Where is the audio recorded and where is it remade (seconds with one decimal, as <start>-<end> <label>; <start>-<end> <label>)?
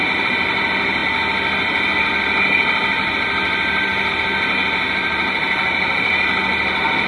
0.0-7.1 recorded